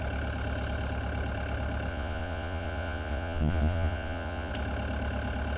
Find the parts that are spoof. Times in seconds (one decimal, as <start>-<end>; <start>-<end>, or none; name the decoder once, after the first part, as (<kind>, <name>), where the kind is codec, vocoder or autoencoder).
1.9-4.5 (vocoder, Vocos)